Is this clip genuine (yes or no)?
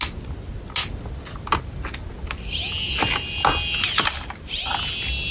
yes